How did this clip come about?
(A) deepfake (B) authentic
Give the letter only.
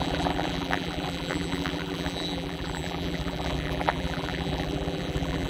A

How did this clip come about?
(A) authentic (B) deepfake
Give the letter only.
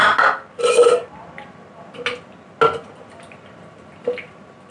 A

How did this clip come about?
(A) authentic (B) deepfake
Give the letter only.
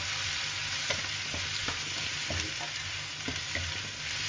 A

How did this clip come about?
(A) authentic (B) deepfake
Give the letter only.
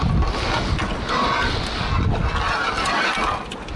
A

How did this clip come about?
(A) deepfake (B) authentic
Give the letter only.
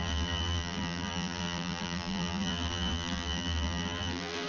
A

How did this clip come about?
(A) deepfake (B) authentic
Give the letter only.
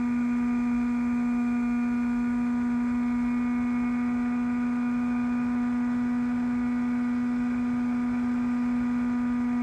B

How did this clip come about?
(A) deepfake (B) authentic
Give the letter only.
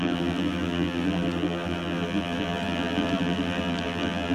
A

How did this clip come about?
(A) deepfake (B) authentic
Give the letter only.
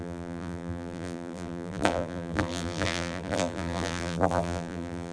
A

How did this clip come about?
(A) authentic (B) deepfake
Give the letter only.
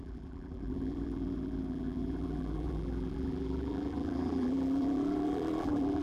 B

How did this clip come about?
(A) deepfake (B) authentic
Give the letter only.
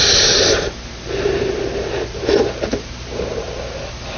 A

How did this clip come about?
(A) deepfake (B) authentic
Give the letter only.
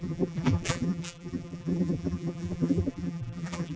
A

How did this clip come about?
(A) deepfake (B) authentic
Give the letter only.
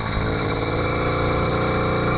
B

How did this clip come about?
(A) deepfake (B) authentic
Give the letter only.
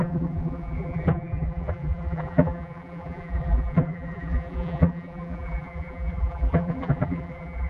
A